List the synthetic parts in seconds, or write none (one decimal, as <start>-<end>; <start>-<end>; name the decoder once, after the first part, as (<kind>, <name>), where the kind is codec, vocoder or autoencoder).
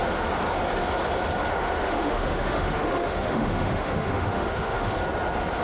1.5-4.9 (autoencoder, DAC-VAE)